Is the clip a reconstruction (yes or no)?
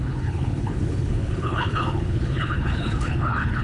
yes